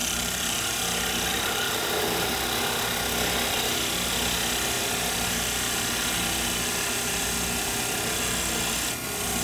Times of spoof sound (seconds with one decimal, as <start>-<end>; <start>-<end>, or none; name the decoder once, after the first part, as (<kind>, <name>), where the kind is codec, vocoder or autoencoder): 0.0-0.8 (vocoder, BigVGAN v2); 1.3-2.3